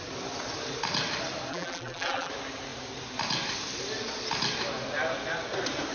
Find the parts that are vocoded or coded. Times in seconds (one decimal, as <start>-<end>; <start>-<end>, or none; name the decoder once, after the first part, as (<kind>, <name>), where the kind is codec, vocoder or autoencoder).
1.5-2.3 (vocoder, BigVGAN v2)